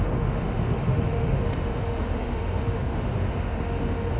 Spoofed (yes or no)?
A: yes